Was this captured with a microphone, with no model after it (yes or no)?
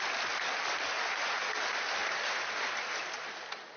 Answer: yes